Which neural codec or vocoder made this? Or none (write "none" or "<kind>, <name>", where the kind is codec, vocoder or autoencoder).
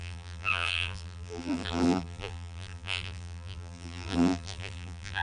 vocoder, BigVGAN v2